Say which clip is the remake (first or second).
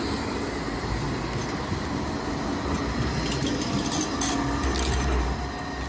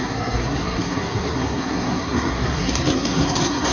second